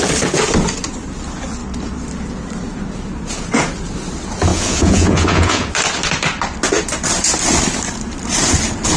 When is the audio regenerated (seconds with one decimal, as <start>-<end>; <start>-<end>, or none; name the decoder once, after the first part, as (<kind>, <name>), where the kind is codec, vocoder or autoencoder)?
4.5-5.7 (vocoder, Vocos)